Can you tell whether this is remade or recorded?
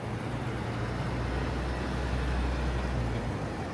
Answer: recorded